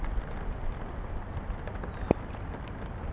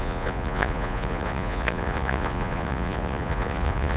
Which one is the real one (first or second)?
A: first